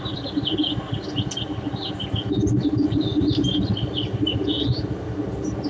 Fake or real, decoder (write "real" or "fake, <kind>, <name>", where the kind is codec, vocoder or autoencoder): real